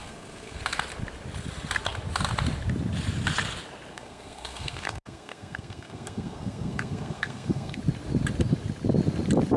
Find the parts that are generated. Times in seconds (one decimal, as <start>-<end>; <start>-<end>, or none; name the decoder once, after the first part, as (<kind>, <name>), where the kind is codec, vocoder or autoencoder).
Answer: 0.0-0.6 (codec, SNAC); 3.9-7.8